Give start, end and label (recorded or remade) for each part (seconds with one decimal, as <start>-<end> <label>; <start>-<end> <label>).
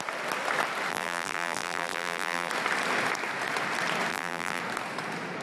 0.0-0.9 recorded; 0.9-2.5 remade; 2.5-4.1 recorded; 4.1-4.6 remade; 4.6-5.4 recorded